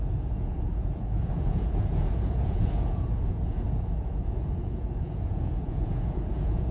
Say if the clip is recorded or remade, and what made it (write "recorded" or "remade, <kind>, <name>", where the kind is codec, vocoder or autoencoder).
remade, vocoder, Vocos